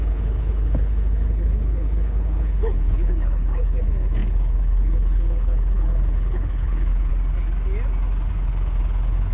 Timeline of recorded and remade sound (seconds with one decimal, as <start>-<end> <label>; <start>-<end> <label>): 0.0-7.1 remade; 7.1-8.3 recorded; 8.3-9.3 remade